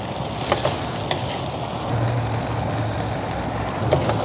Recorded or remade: recorded